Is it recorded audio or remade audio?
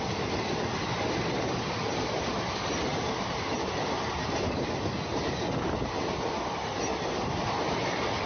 recorded